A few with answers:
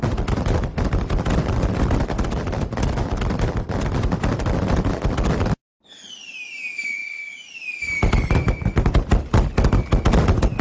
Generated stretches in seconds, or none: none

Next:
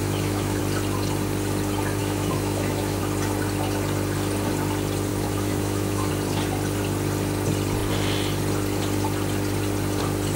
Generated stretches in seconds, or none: 0.0-0.6 (autoencoder, DAC-VAE); 2.0-3.0; 5.1-6.1